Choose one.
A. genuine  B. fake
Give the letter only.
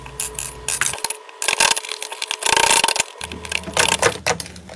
A